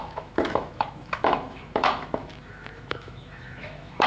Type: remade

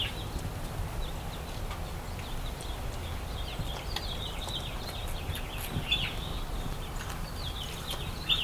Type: recorded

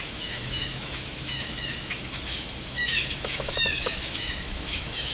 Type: remade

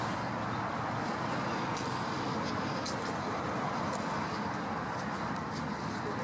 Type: recorded